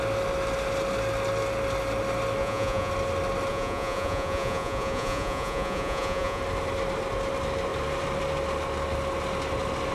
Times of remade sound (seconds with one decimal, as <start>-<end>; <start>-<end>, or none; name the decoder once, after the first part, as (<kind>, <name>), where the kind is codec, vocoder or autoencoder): 2.4-2.9 (vocoder, Vocos); 3.5-6.4